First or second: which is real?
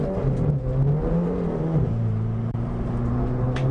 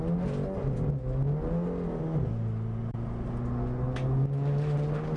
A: second